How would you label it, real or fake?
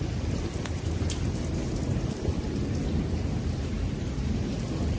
real